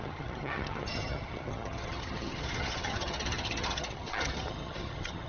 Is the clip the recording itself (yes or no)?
no